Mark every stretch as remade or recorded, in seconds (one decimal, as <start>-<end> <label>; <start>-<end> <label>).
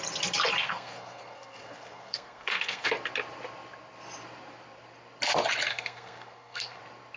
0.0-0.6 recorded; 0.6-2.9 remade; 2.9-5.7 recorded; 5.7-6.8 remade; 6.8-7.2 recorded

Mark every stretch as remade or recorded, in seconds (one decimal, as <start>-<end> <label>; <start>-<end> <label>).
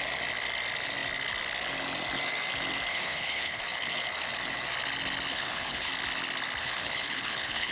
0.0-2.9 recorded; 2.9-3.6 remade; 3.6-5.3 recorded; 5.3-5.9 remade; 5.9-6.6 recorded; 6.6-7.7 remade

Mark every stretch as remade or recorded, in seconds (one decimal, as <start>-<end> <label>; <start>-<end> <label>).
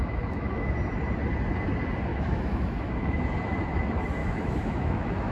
0.0-0.7 remade; 0.7-2.1 recorded; 2.1-3.2 remade; 3.2-4.2 recorded; 4.2-5.3 remade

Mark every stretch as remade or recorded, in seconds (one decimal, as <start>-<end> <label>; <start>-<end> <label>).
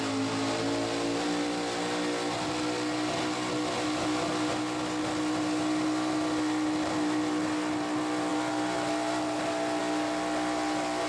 0.0-11.1 recorded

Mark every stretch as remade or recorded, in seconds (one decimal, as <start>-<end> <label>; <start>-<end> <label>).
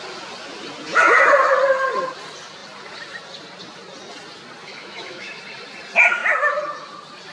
0.0-4.6 recorded; 4.6-5.4 remade; 5.4-7.3 recorded